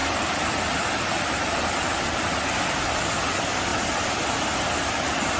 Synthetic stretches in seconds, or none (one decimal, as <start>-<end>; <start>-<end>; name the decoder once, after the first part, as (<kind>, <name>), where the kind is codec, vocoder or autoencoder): none